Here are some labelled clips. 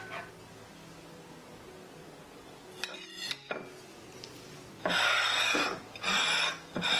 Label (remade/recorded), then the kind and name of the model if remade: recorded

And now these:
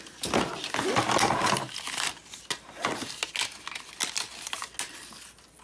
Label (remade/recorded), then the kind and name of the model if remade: recorded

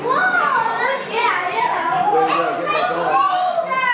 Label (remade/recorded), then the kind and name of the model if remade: recorded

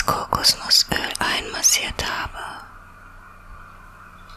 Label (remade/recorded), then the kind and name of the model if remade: recorded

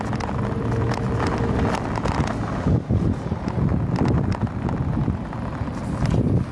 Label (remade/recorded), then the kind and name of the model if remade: recorded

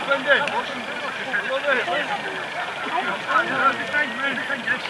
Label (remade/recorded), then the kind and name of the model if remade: recorded